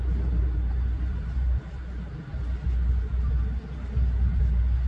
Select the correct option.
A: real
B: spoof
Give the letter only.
A